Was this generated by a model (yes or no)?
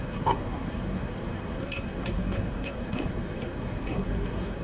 yes